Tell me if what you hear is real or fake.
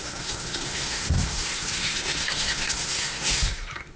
fake